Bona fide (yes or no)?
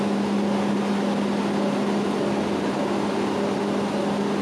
yes